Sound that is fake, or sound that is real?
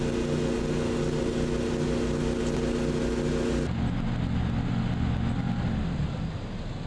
real